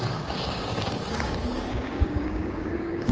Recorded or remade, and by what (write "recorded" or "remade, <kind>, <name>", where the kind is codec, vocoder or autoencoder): remade, codec, DAC